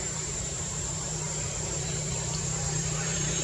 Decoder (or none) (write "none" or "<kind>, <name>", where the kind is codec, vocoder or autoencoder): vocoder, BigVGAN v2